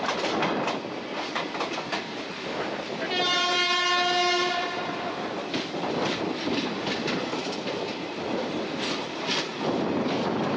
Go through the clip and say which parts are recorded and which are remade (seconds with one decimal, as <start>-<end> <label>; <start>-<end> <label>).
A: 0.0-10.6 recorded